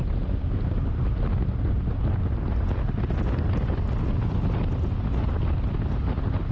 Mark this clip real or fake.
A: real